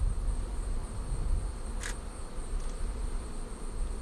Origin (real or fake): real